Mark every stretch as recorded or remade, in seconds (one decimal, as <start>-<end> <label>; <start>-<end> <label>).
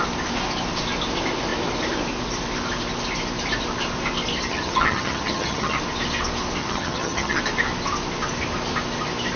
0.0-4.5 recorded; 4.5-5.8 remade; 5.8-6.6 recorded; 6.6-7.4 remade; 7.4-9.4 recorded